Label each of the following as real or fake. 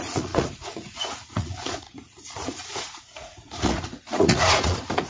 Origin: fake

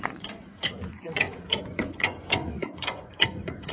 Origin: fake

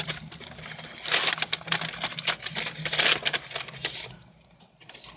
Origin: real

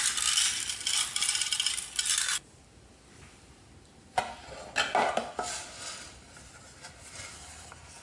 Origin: real